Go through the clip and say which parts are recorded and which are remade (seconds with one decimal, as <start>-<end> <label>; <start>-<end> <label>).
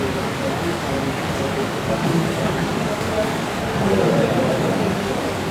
0.0-5.5 remade